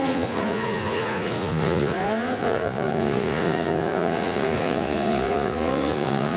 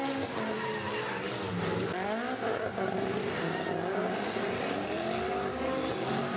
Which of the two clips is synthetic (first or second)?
first